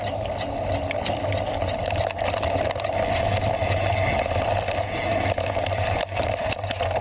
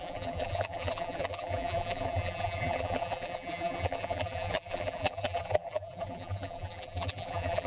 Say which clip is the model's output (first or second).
second